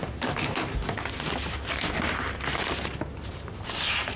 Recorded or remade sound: recorded